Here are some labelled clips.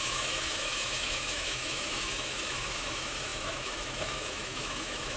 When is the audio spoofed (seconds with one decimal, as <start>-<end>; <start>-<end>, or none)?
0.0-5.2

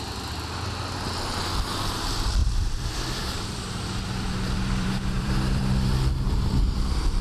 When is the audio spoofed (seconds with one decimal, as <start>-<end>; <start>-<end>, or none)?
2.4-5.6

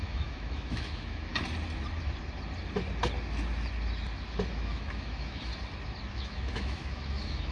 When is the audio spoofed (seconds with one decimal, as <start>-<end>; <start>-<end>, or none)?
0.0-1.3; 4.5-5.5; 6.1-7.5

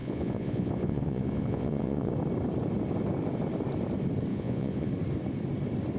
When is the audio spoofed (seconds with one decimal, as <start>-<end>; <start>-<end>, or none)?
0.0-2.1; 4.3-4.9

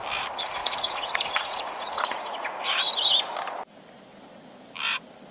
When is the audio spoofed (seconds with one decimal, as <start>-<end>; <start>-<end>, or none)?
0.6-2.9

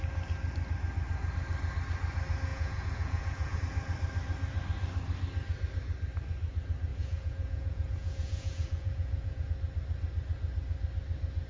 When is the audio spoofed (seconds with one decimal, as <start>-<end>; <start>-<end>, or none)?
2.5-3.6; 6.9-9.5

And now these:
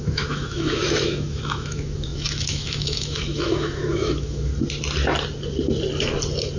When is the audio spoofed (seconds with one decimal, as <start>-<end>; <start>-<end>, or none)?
0.0-4.5

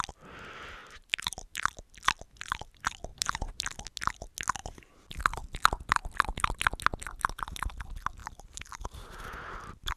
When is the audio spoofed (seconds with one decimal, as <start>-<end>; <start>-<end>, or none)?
0.8-1.6; 3.1-3.8; 4.6-5.2; 8.2-10.0